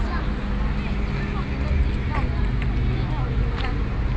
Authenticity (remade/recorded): recorded